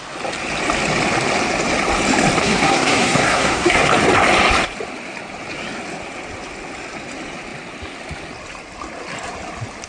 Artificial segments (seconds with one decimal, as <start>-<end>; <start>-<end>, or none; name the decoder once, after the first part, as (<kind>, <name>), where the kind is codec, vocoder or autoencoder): 2.4-3.9 (codec, SNAC)